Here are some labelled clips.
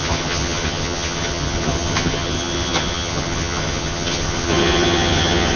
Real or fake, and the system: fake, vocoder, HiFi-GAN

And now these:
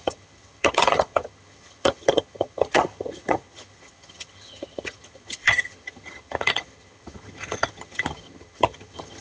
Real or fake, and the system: fake, vocoder, HiFi-GAN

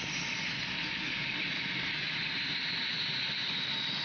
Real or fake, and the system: real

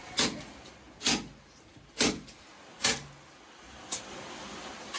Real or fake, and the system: real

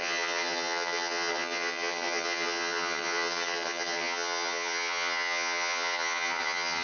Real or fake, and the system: fake, vocoder, HiFi-GAN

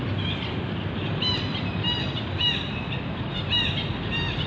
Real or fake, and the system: real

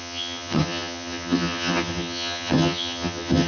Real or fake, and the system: fake, vocoder, HiFi-GAN